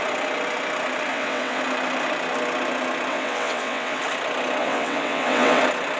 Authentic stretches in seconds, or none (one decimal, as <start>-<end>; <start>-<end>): 0.0-1.1; 1.6-3.1; 4.0-4.6; 5.6-6.0